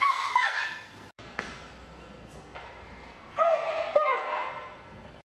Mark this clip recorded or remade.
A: remade